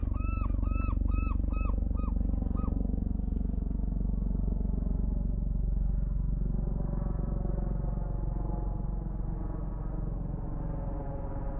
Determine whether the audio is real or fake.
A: real